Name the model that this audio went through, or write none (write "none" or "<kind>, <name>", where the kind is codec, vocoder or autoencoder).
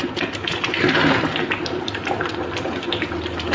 none